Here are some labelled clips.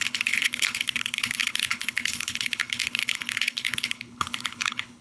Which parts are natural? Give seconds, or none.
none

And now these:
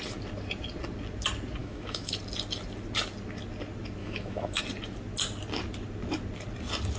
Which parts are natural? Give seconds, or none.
0.0-1.6; 2.1-4.0; 4.6-7.0

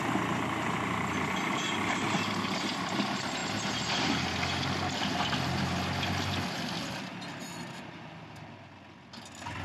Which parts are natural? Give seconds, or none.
0.0-9.6

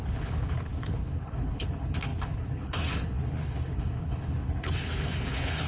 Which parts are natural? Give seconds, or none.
none

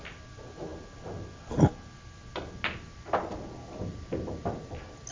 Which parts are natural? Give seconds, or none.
0.0-5.1

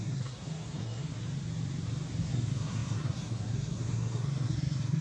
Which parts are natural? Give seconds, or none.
1.1-2.2

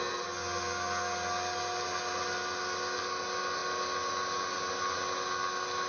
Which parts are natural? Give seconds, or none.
0.0-5.9